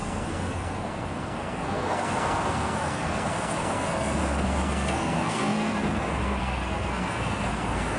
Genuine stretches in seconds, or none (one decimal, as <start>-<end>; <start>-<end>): none